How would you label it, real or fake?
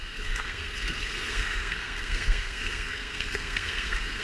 fake